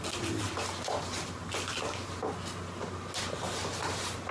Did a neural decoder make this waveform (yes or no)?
no